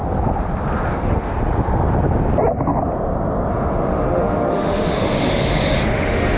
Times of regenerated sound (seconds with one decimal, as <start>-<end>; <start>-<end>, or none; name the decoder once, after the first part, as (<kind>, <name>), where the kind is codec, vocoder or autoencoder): 0.9-1.3 (autoencoder, DAC-VAE); 3.5-6.4